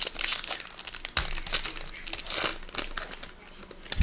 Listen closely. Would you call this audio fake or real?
real